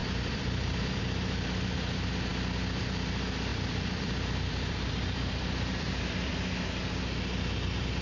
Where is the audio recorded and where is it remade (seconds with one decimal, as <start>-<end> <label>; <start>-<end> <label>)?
0.0-1.0 remade; 1.0-3.5 recorded; 3.5-6.3 remade; 6.3-8.0 recorded